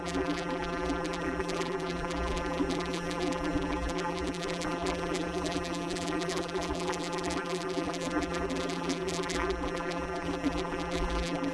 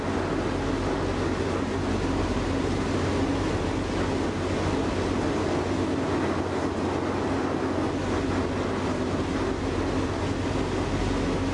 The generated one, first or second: first